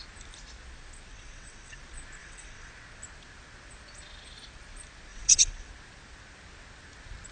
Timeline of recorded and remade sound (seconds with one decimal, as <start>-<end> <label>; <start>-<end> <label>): 0.0-1.1 recorded; 1.1-1.8 remade; 1.8-2.2 recorded; 2.2-2.7 remade; 2.7-5.1 recorded; 5.1-5.7 remade; 5.7-7.3 recorded

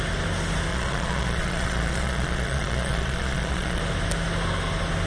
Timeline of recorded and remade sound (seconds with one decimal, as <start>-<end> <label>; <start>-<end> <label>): 0.0-0.7 recorded; 0.7-3.8 remade; 3.8-5.1 recorded

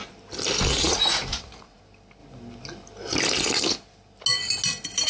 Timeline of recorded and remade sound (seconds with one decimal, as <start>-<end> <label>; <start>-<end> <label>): 0.0-0.7 recorded; 0.7-1.8 remade; 1.8-5.1 recorded